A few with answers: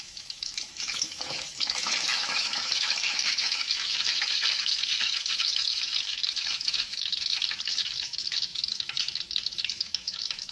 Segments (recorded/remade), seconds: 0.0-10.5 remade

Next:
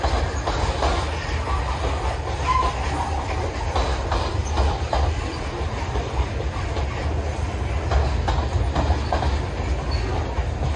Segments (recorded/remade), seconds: 0.0-4.4 recorded; 4.4-6.8 remade; 6.8-10.8 recorded

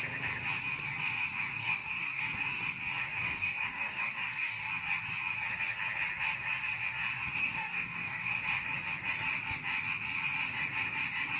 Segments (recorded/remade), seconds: 0.0-1.6 recorded; 1.6-2.2 remade; 2.2-3.2 recorded; 3.2-4.7 remade; 4.7-7.4 recorded; 7.4-8.4 remade; 8.4-11.4 recorded

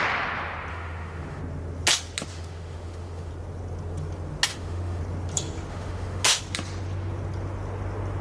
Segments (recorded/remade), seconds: 0.0-0.7 recorded; 0.7-1.4 remade; 1.4-2.3 recorded; 2.3-3.3 remade; 3.3-4.5 recorded; 4.5-5.0 remade; 5.0-5.7 recorded; 5.7-6.4 remade; 6.4-8.2 recorded

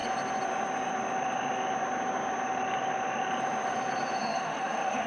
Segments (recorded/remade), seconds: 0.0-4.2 recorded; 4.2-5.1 remade

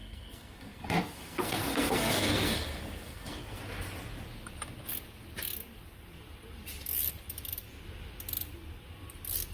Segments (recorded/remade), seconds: 0.0-3.6 remade; 3.6-9.5 recorded

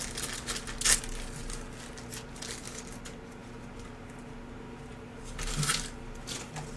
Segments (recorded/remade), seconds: 0.0-6.8 recorded